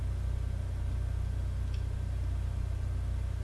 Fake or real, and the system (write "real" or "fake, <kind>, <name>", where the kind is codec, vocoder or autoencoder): real